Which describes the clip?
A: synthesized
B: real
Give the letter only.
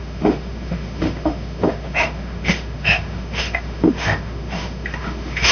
A